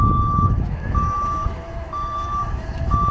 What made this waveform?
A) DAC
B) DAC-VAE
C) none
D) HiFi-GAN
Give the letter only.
B